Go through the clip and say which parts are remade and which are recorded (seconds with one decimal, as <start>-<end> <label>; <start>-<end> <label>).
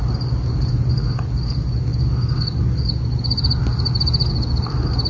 0.0-5.1 recorded